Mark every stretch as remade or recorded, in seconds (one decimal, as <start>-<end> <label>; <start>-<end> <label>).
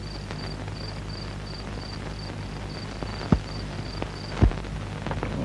0.0-5.4 recorded